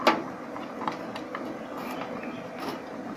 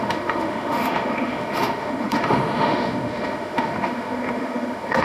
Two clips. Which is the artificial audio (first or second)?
second